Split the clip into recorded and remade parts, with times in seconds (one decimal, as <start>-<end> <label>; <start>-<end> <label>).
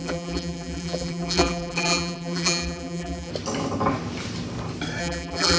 0.0-3.3 remade; 3.3-5.0 recorded; 5.0-5.6 remade